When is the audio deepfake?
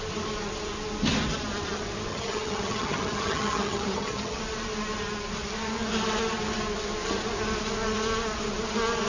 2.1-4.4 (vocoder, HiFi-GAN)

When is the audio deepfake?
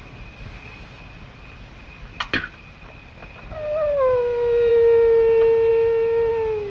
none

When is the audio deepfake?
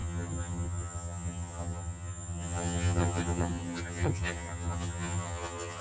0.0-5.8 (vocoder, HiFi-GAN)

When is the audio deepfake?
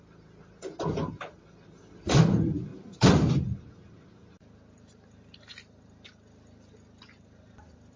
none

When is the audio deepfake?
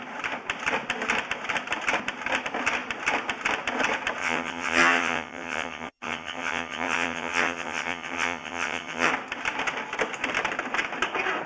4.2-9.1 (vocoder, HiFi-GAN)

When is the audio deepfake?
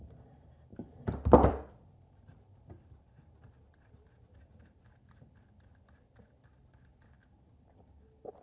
none